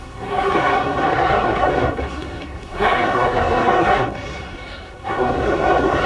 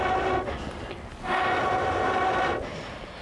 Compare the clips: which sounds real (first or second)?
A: second